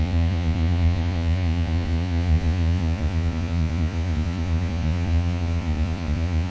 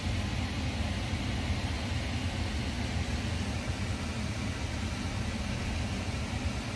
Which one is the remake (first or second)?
first